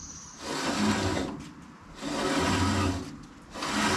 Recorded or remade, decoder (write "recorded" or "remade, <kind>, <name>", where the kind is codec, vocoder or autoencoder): recorded